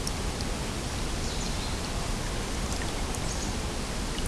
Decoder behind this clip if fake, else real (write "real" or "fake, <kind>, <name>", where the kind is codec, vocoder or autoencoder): real